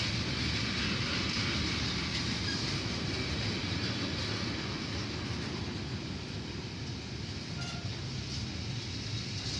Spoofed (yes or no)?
no